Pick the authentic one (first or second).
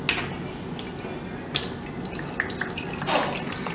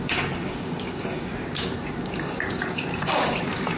first